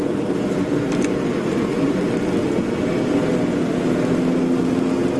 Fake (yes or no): no